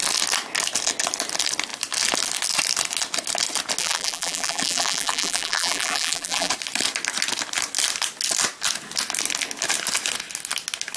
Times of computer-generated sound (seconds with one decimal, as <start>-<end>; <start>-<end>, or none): 3.8-6.5